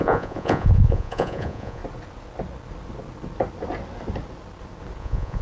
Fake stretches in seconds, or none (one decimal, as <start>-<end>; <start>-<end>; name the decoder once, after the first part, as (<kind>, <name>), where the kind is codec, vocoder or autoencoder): 0.0-1.8 (vocoder, Vocos); 5.0-5.4